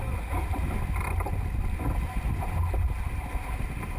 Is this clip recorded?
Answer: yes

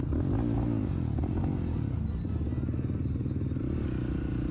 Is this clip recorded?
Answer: yes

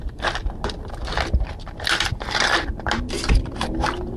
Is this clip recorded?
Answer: yes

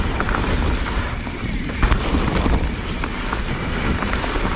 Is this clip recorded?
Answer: yes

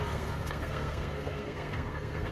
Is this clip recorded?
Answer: no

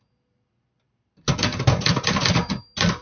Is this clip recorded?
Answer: yes